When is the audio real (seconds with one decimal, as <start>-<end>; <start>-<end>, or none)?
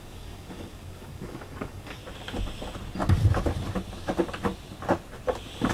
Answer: 2.0-5.7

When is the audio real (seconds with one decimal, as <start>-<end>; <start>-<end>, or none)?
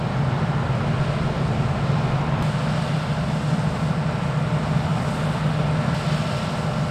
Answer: 0.0-6.9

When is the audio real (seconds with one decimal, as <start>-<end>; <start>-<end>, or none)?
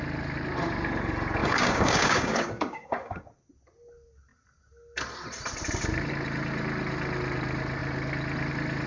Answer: 0.0-1.4; 3.2-8.9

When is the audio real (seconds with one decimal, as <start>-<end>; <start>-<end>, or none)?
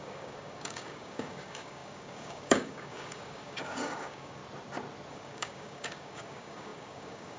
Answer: 4.4-5.1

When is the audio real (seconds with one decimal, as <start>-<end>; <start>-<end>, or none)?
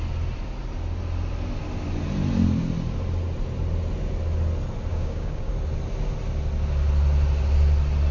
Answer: 0.0-4.9; 5.5-8.1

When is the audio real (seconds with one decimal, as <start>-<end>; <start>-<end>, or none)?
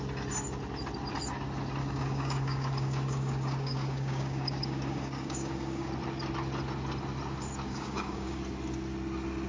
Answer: 0.0-1.8; 5.9-7.7; 8.4-9.5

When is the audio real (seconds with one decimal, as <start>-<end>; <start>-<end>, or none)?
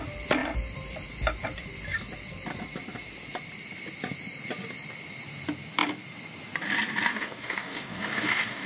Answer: 0.0-7.1